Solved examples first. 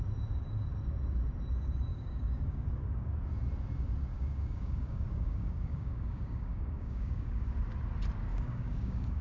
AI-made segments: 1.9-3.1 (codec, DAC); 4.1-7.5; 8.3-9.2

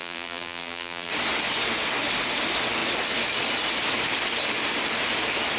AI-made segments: 0.0-1.1 (vocoder, BigVGAN v2)

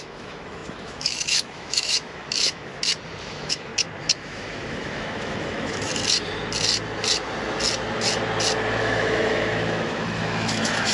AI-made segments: 0.0-2.7 (autoencoder, DAC-VAE); 3.2-3.7; 4.2-5.9; 8.8-10.9

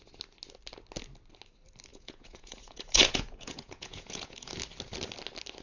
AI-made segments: 1.9-4.5 (vocoder, Vocos)

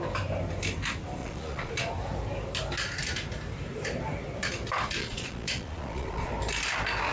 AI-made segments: 1.2-1.7 (vocoder, Vocos); 5.0-6.3

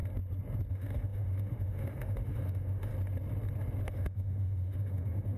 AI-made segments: 0.7-2.9 (autoencoder, DAC-VAE); 3.9-5.4

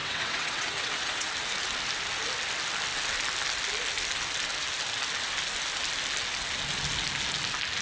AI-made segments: 0.0-1.3 (vocoder, WaveNeXt)

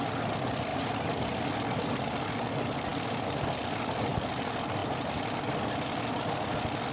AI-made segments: 0.7-1.2 (vocoder, BigVGAN v2)